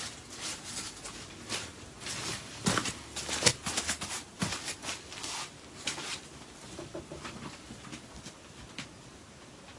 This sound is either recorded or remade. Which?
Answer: recorded